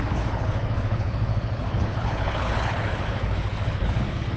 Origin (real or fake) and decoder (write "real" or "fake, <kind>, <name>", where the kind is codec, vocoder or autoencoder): fake, codec, HILCodec